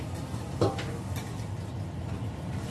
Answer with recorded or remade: recorded